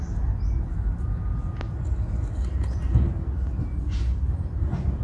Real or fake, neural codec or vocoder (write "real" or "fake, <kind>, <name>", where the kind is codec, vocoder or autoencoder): real